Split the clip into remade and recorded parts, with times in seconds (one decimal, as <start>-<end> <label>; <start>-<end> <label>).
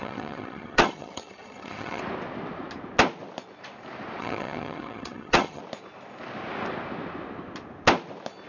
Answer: 0.0-2.0 remade; 2.0-4.2 recorded; 4.2-5.6 remade; 5.6-8.5 recorded